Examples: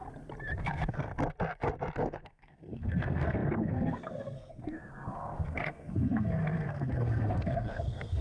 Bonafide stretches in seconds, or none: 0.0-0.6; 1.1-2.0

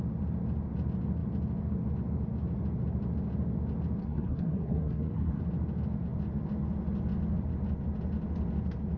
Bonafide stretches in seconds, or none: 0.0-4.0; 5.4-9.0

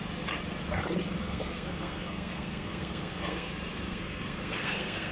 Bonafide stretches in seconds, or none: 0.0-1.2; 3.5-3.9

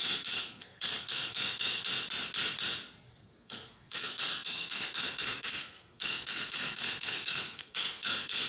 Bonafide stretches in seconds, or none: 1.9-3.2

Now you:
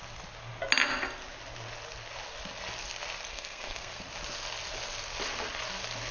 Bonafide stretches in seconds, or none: 0.0-3.3; 4.0-6.1

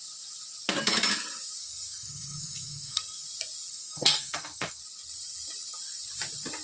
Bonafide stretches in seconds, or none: 0.0-1.6; 3.2-3.7; 4.8-6.6

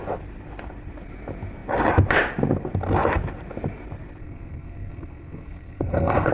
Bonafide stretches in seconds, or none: 0.0-4.2

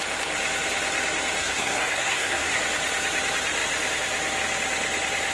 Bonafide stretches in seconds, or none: 0.0-1.4; 2.6-5.3